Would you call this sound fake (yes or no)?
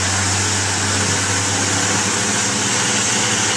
no